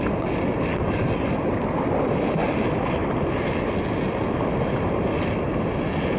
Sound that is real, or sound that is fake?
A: real